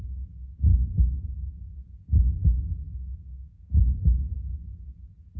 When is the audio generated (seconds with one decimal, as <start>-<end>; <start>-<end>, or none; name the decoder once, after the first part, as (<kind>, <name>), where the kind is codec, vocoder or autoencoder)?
0.7-1.7 (autoencoder, DAC-VAE); 2.4-4.5